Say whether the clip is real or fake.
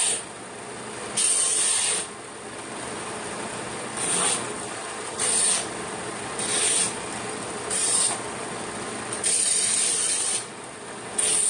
fake